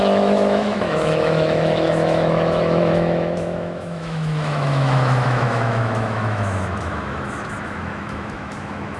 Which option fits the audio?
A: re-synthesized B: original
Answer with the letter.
A